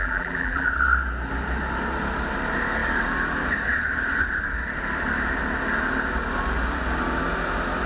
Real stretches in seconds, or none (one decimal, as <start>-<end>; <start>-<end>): 0.7-7.9